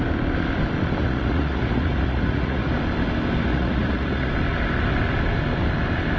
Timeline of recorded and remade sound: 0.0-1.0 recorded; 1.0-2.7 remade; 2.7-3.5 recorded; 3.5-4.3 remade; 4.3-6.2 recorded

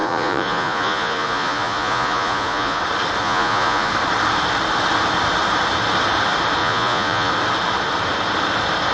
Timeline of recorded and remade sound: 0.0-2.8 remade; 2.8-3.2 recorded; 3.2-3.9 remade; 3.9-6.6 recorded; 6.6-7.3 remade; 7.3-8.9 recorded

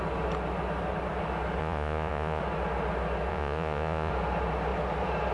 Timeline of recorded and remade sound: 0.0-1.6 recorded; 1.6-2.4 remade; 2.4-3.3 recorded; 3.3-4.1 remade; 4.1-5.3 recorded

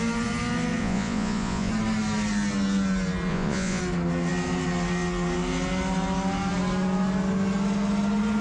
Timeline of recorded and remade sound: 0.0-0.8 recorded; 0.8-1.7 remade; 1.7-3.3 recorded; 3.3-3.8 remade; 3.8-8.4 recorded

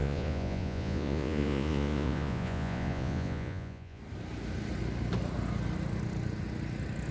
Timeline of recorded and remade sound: 0.0-4.0 remade; 4.0-7.1 recorded

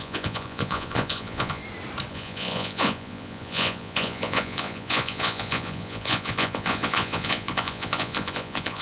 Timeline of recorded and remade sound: 0.0-1.6 remade; 1.6-2.1 recorded; 2.1-8.8 remade